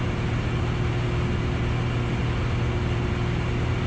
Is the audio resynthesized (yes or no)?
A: no